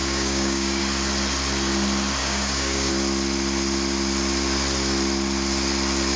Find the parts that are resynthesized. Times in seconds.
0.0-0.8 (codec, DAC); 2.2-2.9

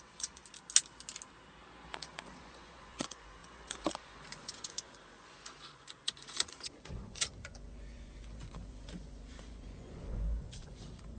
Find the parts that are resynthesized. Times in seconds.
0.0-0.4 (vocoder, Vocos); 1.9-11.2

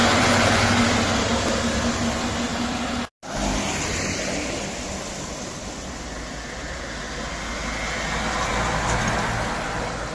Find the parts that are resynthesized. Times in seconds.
0.0-0.6 (vocoder, Vocos)

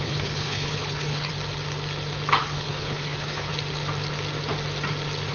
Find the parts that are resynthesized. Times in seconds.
0.0-1.3 (codec, HILCodec); 2.4-3.5